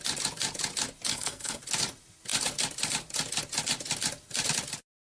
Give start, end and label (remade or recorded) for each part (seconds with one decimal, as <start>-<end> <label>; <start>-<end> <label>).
0.0-1.1 recorded; 1.1-1.6 remade; 1.6-5.1 recorded